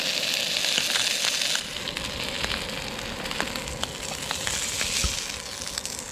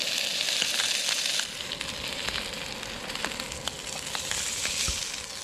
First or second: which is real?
first